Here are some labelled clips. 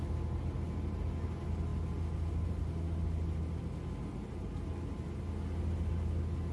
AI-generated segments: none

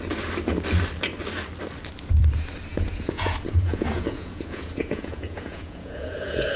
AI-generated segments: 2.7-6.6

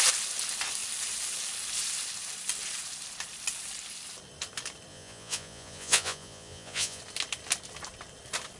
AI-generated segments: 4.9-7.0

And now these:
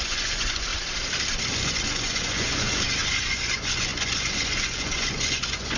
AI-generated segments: 0.0-0.7; 1.5-5.8

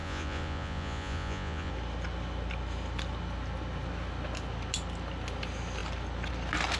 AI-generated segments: 0.0-1.7

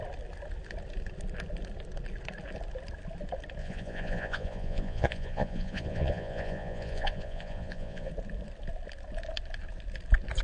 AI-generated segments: 3.6-8.1